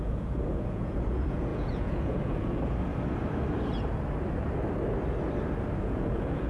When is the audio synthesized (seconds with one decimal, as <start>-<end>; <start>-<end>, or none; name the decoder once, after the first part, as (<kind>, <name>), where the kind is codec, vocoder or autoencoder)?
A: 0.0-2.9 (vocoder, Vocos); 5.8-6.5